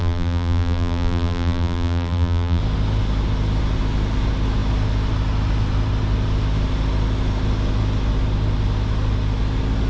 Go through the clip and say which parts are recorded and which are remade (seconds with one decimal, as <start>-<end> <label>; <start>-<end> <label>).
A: 0.0-2.6 remade; 2.6-9.9 recorded